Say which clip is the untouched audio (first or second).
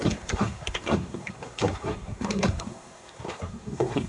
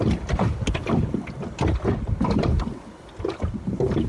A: second